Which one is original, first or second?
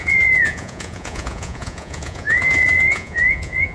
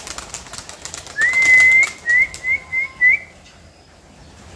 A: second